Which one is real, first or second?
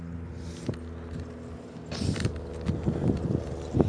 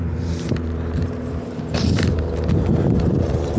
first